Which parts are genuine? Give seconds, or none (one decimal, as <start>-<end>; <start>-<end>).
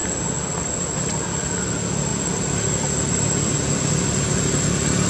0.0-5.1